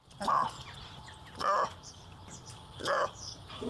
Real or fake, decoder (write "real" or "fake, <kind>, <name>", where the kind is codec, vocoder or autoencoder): real